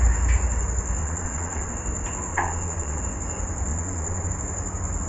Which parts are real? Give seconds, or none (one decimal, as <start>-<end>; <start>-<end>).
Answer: 0.0-1.0; 1.7-2.3; 3.0-3.7; 4.3-5.1